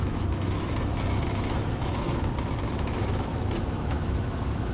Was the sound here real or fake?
fake